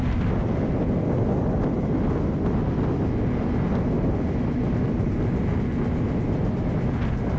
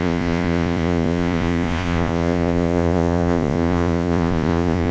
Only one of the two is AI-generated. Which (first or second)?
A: second